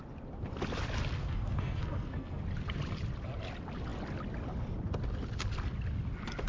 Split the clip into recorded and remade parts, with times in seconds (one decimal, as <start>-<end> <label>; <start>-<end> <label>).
0.0-1.2 recorded; 1.2-2.4 remade; 2.4-6.5 recorded